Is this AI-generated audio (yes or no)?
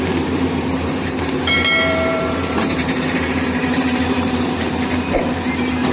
yes